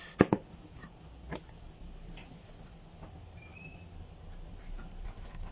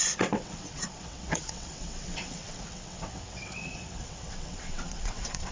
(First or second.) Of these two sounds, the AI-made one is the second